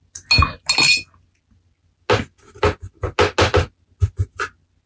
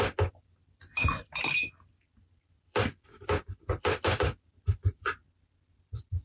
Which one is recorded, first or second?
first